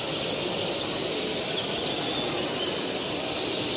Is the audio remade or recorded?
recorded